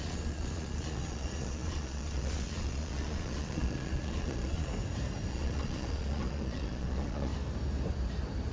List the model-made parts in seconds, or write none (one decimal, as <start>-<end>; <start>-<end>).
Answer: 0.0-4.7; 5.3-7.3